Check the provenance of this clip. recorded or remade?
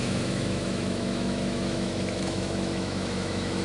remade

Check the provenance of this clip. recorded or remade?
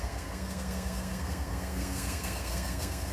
remade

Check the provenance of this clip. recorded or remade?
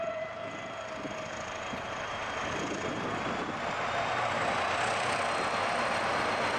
recorded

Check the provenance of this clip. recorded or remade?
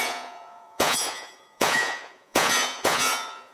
remade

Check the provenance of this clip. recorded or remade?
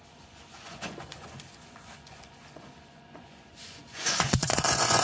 remade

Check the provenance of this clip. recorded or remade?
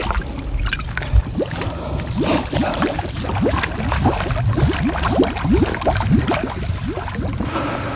recorded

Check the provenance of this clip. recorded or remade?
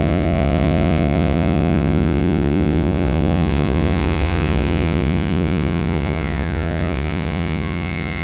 remade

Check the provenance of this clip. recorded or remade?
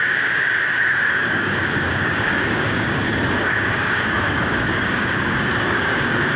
remade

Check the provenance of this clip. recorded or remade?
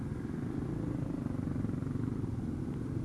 recorded